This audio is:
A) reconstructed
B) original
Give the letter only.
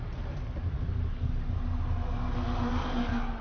B